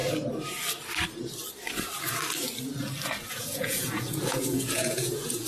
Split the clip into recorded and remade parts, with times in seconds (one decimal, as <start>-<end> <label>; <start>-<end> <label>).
0.0-3.3 recorded; 3.3-5.5 remade